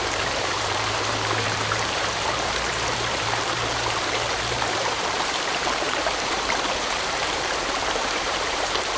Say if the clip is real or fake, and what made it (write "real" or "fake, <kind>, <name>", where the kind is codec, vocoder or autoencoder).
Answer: fake, vocoder, BigVGAN v2